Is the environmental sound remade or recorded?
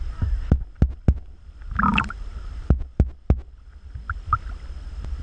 recorded